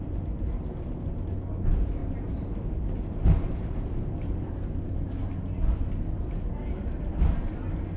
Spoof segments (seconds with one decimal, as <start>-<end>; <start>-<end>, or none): 2.0-5.3